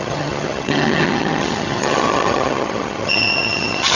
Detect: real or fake fake